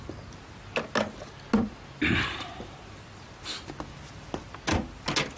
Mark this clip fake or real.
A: real